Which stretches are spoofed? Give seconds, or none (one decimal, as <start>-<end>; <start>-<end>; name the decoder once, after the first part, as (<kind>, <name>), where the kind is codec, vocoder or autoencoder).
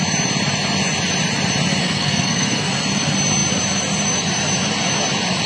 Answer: 1.8-2.7 (codec, SNAC)